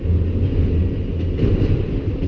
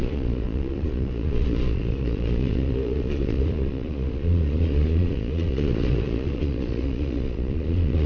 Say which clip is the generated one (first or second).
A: second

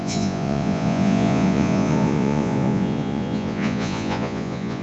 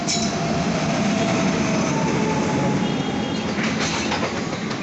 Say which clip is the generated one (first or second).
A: first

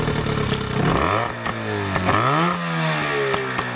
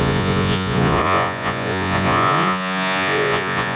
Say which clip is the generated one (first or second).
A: second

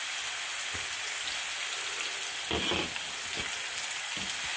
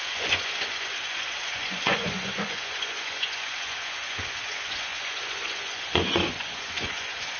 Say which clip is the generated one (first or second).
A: second